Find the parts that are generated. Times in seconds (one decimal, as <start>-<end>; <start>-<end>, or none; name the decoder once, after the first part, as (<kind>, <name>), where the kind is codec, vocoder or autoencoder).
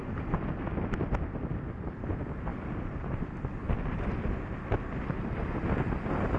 none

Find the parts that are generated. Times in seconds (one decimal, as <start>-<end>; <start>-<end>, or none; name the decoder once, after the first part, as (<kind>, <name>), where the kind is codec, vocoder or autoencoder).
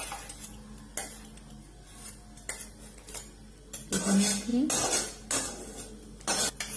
none